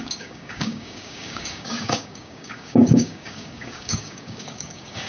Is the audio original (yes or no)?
no